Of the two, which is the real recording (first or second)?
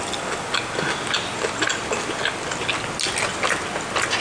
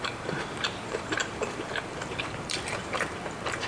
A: first